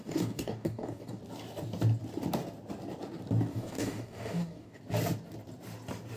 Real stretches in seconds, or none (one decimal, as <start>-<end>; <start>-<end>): 1.2-3.5; 4.8-6.2

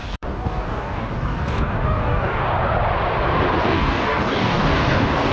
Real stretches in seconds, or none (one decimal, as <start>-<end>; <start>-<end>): 2.4-3.6

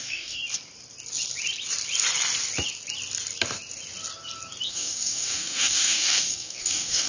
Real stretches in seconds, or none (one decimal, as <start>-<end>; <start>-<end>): 0.4-4.7

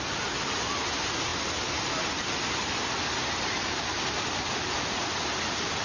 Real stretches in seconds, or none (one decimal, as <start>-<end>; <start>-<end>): 0.0-5.8